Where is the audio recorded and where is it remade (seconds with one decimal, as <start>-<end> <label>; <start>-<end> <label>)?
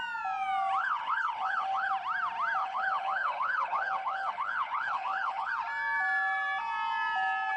0.0-0.8 recorded; 0.8-1.9 remade; 1.9-2.6 recorded; 2.6-5.5 remade; 5.5-7.6 recorded